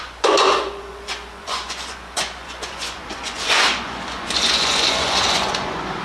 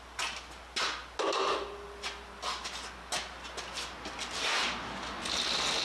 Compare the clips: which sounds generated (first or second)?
first